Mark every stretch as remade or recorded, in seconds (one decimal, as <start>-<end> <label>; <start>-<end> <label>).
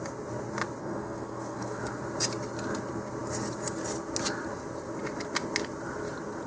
0.0-0.8 recorded; 0.8-1.8 remade; 1.8-6.5 recorded